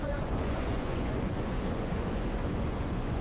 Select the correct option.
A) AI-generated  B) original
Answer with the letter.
A